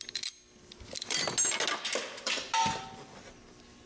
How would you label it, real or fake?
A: real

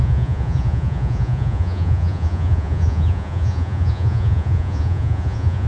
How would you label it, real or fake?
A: fake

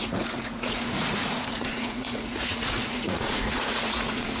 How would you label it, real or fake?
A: fake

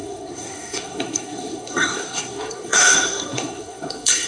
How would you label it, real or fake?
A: fake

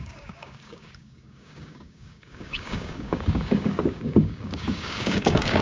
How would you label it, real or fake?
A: fake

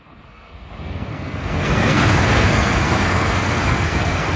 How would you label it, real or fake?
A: fake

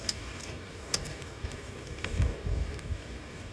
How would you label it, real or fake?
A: fake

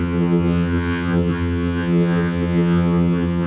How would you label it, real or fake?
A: fake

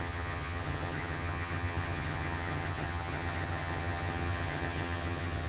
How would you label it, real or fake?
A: fake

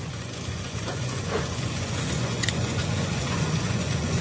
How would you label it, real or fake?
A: fake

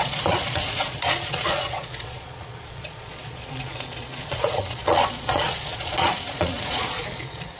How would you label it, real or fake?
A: fake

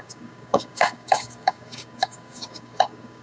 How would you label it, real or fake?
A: fake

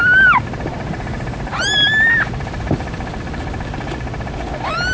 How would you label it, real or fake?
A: real